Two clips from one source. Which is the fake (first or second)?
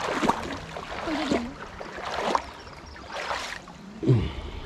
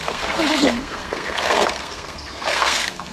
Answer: second